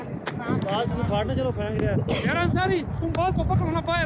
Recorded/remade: recorded